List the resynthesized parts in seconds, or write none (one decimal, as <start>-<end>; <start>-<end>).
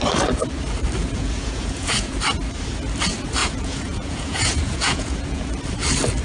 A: 1.0-2.2; 3.4-5.5